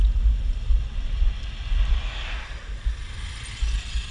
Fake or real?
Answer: real